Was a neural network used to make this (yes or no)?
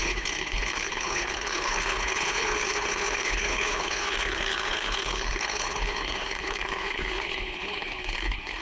yes